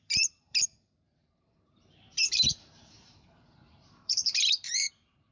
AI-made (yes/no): yes